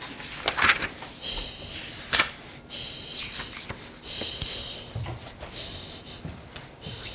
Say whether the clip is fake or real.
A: real